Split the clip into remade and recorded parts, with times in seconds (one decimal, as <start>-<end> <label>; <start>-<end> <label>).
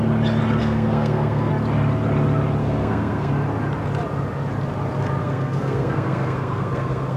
0.0-0.6 recorded; 0.6-1.5 remade; 1.5-2.6 recorded; 2.6-3.3 remade; 3.3-5.2 recorded; 5.2-7.2 remade